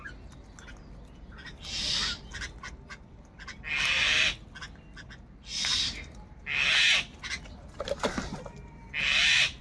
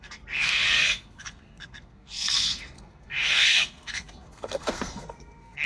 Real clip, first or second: first